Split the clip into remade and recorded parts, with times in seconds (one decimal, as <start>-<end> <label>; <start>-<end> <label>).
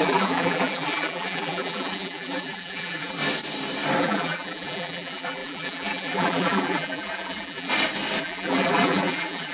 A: 0.0-3.2 remade; 3.2-4.0 recorded; 4.0-7.7 remade; 7.7-8.2 recorded; 8.2-9.5 remade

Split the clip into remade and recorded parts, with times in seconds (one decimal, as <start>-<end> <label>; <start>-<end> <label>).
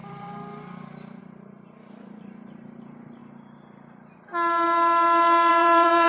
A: 0.0-3.2 remade; 3.2-5.5 recorded; 5.5-6.1 remade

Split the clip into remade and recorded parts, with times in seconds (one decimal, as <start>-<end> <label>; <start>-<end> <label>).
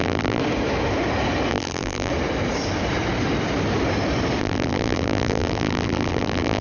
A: 0.0-0.4 remade; 0.4-1.5 recorded; 1.5-2.1 remade; 2.1-4.4 recorded; 4.4-6.6 remade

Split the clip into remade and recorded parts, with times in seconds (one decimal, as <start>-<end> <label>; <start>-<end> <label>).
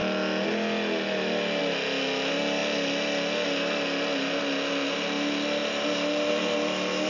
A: 0.0-7.1 recorded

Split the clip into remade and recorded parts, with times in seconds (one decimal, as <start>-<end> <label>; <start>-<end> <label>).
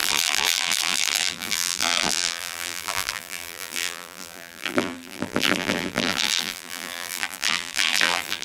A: 0.0-8.4 remade